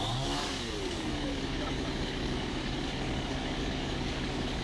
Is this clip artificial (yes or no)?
yes